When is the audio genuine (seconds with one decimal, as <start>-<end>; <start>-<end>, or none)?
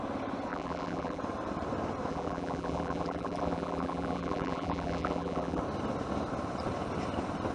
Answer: 0.0-0.5; 1.2-2.1; 5.6-7.5